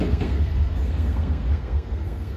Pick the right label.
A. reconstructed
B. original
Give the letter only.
A